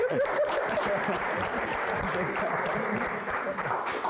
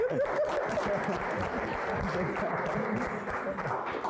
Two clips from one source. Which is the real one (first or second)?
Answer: second